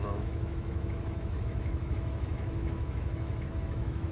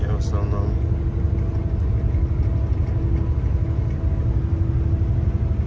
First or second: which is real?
second